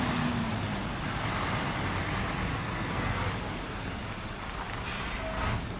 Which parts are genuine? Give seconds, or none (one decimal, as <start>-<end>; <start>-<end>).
0.0-2.5; 3.3-5.8